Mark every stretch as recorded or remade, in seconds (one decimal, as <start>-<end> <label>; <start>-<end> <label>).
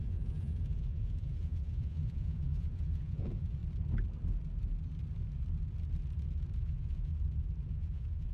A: 0.0-3.6 remade; 3.6-6.6 recorded; 6.6-7.1 remade; 7.1-7.7 recorded; 7.7-8.3 remade